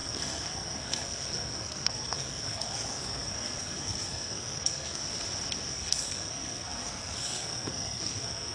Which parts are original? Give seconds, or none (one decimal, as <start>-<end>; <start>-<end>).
5.0-5.7